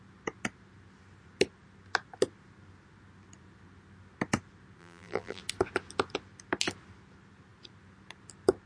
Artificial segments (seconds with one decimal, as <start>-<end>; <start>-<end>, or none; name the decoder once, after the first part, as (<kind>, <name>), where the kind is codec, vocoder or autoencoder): 4.8-5.4 (vocoder, BigVGAN v2)